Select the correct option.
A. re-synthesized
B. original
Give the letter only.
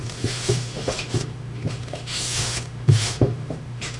A